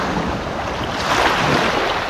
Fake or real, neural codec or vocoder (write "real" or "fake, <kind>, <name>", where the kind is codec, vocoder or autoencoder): real